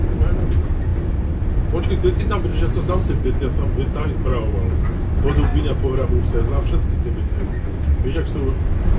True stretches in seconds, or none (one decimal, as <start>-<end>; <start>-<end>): 0.9-2.0; 4.3-5.6